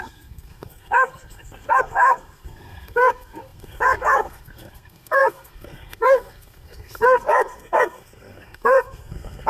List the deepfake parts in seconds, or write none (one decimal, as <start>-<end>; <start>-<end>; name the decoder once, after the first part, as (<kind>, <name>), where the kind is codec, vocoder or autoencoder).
0.0-9.5 (codec, SNAC)